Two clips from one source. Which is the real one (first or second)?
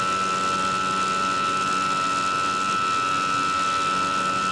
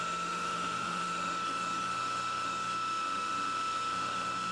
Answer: first